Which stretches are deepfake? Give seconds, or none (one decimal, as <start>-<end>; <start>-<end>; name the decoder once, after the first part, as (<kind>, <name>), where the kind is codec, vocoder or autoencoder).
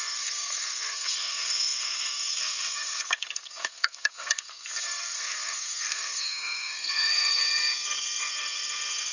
0.0-9.1 (codec, SNAC)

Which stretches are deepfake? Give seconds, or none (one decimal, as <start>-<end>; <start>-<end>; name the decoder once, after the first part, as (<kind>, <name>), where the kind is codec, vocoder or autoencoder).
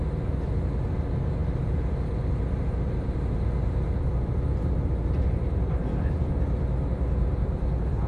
none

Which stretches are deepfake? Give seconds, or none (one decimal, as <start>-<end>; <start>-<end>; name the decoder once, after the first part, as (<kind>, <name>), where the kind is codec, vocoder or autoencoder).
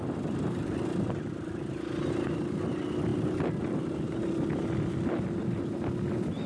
none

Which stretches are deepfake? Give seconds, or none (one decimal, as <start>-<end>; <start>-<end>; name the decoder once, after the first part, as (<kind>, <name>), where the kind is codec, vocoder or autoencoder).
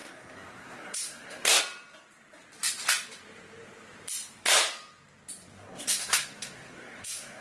0.0-1.6 (codec, SNAC); 5.5-7.4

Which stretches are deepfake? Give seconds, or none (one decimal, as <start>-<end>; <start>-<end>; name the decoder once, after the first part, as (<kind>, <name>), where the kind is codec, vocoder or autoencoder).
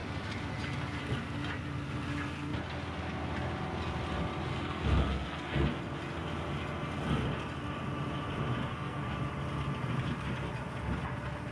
4.5-5.8 (codec, SNAC); 8.7-9.2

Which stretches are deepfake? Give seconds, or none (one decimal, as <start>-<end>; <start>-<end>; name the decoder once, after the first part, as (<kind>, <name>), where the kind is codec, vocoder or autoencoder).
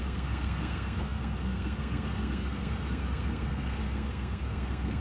0.0-5.0 (codec, SNAC)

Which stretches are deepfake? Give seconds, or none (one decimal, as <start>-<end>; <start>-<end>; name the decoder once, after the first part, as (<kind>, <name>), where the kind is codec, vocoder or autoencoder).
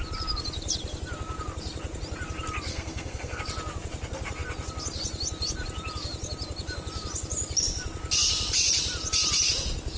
2.7-3.4 (codec, SNAC)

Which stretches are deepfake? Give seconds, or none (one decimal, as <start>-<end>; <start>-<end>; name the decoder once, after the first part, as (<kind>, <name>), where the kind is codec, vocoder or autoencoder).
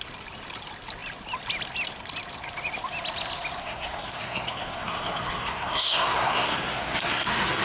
3.6-7.6 (codec, SNAC)